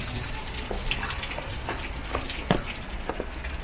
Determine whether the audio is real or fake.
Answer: real